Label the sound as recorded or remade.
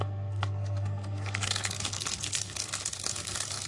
remade